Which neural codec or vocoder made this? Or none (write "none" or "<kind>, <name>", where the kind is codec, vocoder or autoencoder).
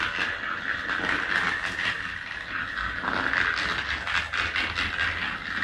none